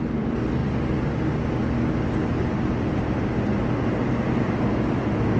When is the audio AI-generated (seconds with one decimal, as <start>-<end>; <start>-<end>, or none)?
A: none